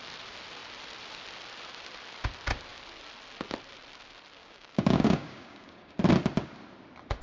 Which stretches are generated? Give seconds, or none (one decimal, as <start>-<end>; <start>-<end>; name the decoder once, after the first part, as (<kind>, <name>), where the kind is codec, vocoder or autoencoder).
4.4-6.0 (codec, DAC)